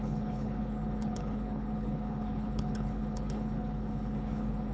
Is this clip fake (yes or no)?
yes